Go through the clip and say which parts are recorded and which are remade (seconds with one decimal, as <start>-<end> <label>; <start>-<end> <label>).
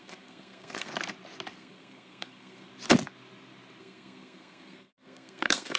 0.0-0.9 remade; 0.9-1.5 recorded; 1.5-2.7 remade; 2.7-3.8 recorded; 3.8-5.8 remade